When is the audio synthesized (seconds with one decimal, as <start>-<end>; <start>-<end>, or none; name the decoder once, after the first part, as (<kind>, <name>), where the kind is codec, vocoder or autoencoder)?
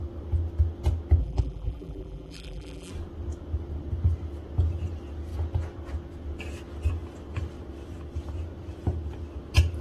1.2-2.9 (vocoder, BigVGAN v2)